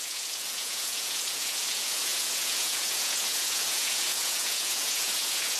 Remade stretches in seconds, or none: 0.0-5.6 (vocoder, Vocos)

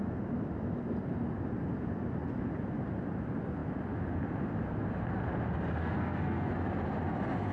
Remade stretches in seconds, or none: 5.8-6.5 (codec, SNAC)

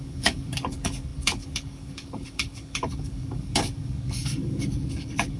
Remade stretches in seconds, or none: 0.0-5.4 (codec, DAC)

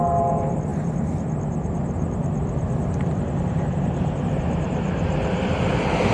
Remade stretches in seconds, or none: 0.0-6.1 (vocoder, BigVGAN v2)

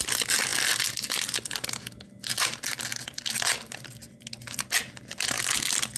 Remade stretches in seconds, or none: none